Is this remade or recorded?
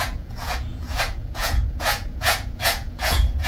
remade